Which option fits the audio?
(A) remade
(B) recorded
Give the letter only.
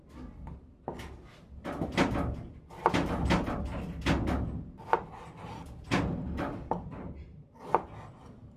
B